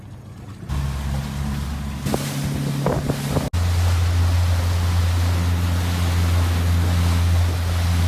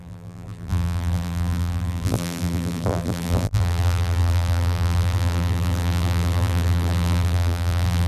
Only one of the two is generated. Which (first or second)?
second